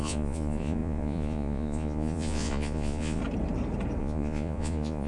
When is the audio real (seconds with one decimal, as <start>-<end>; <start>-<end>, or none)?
3.2-4.0